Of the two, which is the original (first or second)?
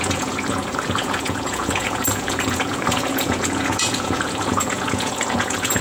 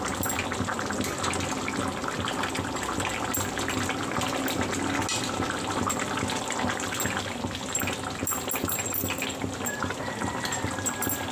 second